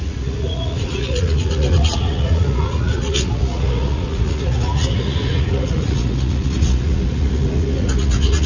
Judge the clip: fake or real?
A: fake